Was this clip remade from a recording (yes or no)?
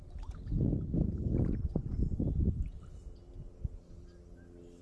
no